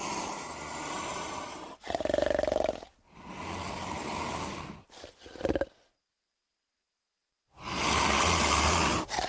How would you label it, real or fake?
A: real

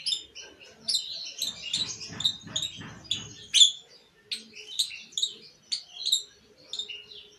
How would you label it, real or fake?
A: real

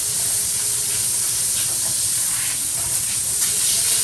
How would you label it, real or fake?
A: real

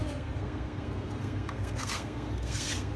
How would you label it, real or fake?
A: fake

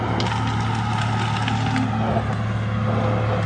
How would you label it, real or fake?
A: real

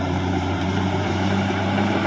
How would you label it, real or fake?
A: fake